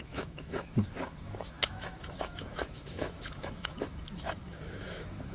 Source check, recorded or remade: remade